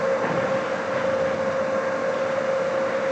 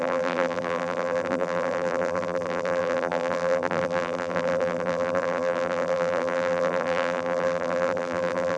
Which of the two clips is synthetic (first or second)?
second